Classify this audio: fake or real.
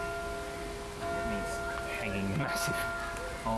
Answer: real